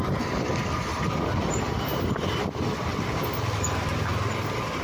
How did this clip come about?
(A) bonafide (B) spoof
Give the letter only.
A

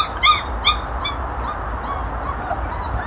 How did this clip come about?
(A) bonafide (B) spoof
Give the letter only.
A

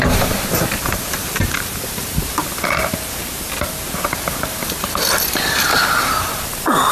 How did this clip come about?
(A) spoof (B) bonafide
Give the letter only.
B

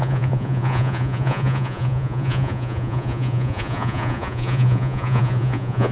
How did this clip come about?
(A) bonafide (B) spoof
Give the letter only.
B